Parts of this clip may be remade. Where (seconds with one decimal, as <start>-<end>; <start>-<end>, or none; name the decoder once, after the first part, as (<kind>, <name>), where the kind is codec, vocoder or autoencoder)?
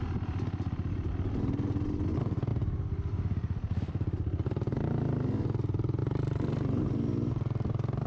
2.5-4.9 (vocoder, BigVGAN v2); 6.0-8.1